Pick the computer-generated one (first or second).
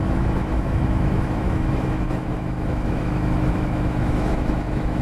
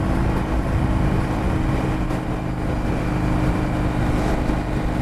first